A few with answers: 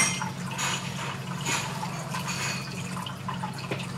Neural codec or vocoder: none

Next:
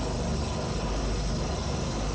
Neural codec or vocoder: none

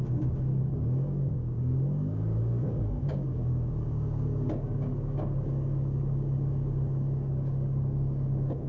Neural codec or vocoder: codec, DAC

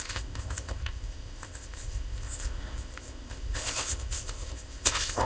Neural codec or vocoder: codec, ZipCodec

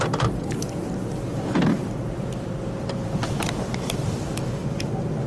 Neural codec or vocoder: vocoder, BigVGAN v2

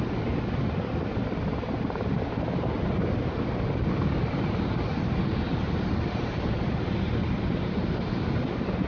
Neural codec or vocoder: none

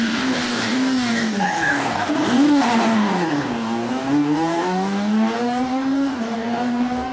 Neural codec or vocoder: codec, DAC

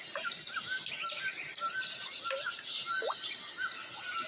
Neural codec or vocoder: none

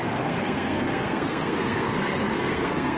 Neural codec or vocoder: codec, SNAC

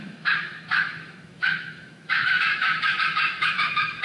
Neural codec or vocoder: autoencoder, DAC-VAE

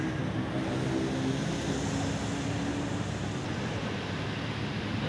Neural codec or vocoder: none